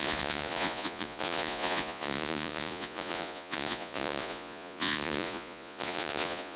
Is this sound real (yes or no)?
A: no